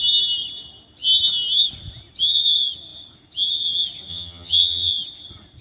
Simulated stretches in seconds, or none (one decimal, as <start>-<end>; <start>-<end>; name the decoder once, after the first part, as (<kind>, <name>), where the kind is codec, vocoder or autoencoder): 4.1-4.9 (vocoder, HiFi-GAN)